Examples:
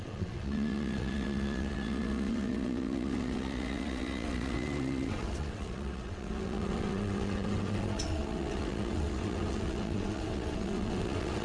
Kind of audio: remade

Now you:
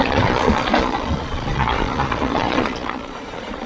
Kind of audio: remade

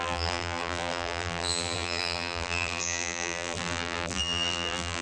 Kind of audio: remade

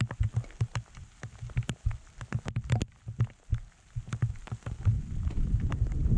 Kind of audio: recorded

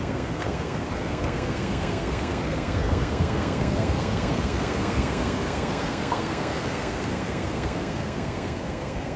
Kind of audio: remade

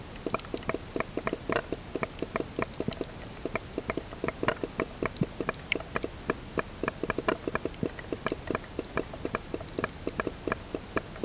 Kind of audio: recorded